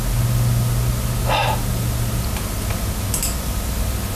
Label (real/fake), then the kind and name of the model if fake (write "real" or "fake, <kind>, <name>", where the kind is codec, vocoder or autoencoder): real